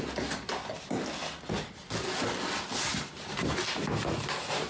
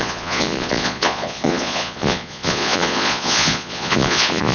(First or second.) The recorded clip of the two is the first